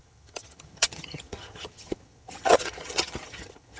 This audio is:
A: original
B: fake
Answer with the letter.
B